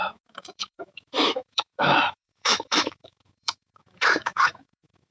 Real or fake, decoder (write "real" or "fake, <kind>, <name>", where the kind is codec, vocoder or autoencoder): fake, autoencoder, DAC-VAE